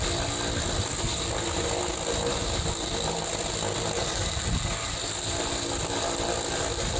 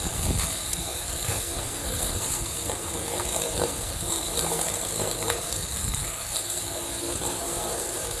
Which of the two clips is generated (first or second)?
second